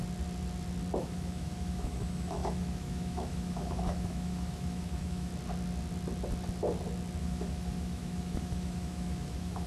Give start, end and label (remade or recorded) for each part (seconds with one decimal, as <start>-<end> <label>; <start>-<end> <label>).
0.0-1.0 recorded; 1.0-5.3 remade; 5.3-7.2 recorded; 7.2-9.7 remade

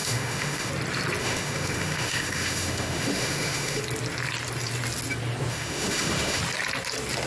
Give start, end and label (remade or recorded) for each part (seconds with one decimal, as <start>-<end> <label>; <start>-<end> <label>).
0.0-0.7 remade; 0.7-1.2 recorded; 1.2-3.8 remade; 3.8-5.5 recorded; 5.5-6.4 remade; 6.4-7.3 recorded

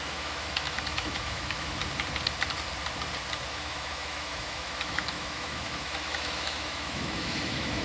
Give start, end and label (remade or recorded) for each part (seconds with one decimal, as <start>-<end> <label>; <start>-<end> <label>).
0.0-1.8 remade; 1.8-3.5 recorded; 3.5-7.8 remade

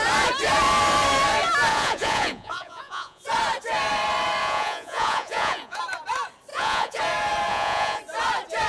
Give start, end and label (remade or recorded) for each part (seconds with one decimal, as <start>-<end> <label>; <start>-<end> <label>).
0.0-1.7 recorded; 1.7-3.2 remade; 3.2-4.4 recorded; 4.4-5.8 remade; 5.8-6.5 recorded; 6.5-7.0 remade; 7.0-7.5 recorded; 7.5-8.0 remade; 8.0-8.7 recorded